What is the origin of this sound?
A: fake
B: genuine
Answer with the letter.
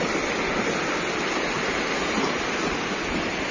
B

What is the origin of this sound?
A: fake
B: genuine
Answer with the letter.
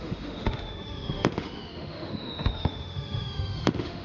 A